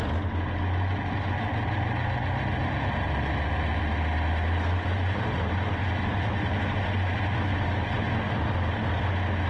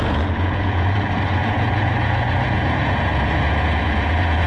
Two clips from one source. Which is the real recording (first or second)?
first